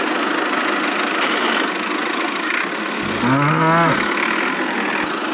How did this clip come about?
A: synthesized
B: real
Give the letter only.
B